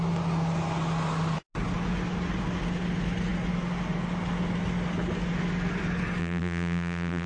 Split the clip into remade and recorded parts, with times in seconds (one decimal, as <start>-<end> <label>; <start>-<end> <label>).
0.0-6.2 recorded; 6.2-7.3 remade